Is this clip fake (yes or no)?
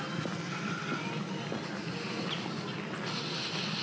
no